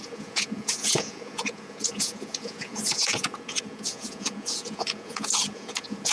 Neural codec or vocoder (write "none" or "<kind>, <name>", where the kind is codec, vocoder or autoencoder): vocoder, Vocos